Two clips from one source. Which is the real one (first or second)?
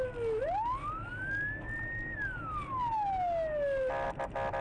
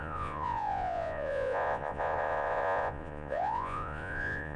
first